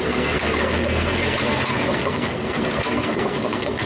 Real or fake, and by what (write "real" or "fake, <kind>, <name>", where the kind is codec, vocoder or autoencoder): fake, codec, SNAC